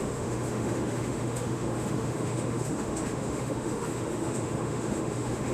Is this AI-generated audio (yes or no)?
yes